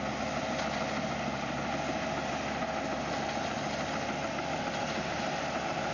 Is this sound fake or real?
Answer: real